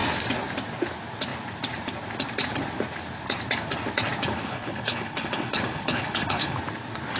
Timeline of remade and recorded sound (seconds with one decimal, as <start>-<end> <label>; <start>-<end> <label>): 0.0-4.2 recorded; 4.2-6.6 remade; 6.6-7.2 recorded